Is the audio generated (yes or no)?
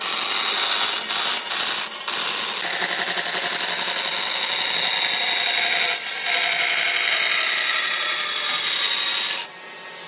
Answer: no